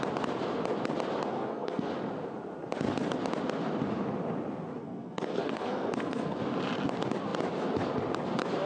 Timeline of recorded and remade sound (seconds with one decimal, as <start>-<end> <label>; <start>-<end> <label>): 0.0-1.2 recorded; 1.2-1.9 remade; 1.9-4.8 recorded; 4.8-6.4 remade; 6.4-8.7 recorded